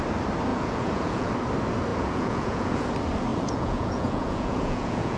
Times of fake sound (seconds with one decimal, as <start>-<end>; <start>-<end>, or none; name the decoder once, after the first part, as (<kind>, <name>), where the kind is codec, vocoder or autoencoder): 0.5-1.3 (vocoder, Vocos); 1.9-2.9; 3.3-5.2

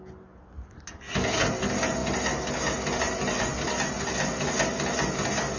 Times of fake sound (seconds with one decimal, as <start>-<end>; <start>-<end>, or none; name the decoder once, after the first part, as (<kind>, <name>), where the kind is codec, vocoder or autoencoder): none

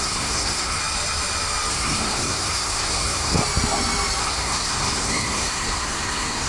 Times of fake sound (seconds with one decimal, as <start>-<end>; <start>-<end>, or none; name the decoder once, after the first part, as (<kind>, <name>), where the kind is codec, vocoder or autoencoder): 0.0-0.8 (codec, SNAC); 1.7-3.4; 4.2-6.5

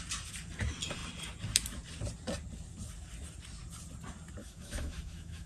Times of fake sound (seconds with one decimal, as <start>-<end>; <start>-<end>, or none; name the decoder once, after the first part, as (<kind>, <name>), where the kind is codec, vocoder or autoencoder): 4.4-5.5 (autoencoder, DAC-VAE)

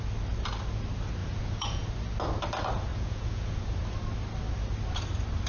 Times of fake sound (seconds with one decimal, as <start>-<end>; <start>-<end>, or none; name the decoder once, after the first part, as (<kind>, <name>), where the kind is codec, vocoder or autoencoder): 1.2-1.9 (vocoder, Vocos); 2.9-3.6

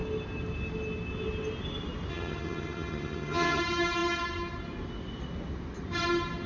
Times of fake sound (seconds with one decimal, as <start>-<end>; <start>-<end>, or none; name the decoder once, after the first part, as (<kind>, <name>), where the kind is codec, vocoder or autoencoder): 2.1-3.6 (vocoder, HiFi-GAN)